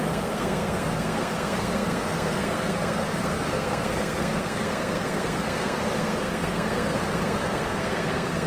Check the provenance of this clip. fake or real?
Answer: fake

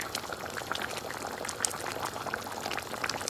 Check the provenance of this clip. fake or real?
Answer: real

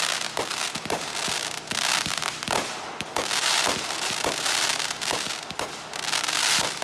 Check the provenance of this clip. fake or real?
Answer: real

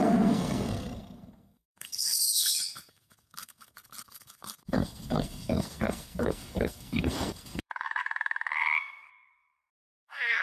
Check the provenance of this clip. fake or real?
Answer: fake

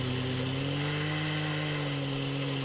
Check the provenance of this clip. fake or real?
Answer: real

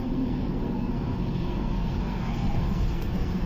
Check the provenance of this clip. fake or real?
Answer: fake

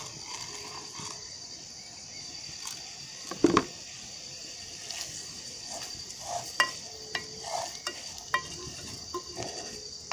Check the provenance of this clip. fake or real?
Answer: real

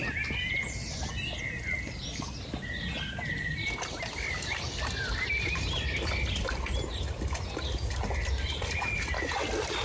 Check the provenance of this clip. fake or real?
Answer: real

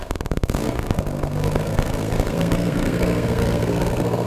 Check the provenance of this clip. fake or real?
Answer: fake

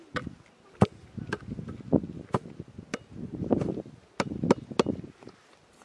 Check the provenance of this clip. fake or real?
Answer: real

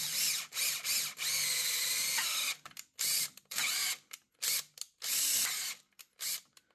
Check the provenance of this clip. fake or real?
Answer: real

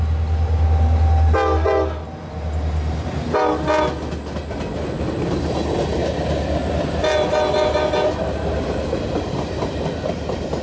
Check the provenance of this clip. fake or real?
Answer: real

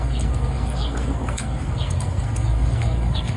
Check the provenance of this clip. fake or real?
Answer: fake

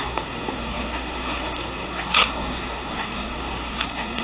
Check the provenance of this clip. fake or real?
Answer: fake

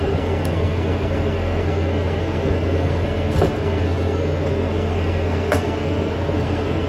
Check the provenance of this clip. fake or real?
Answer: fake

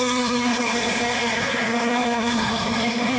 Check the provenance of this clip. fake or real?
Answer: fake